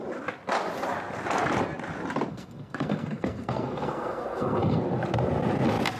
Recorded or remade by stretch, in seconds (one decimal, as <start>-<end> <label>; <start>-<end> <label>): 0.0-2.3 recorded; 2.3-4.8 remade; 4.8-6.0 recorded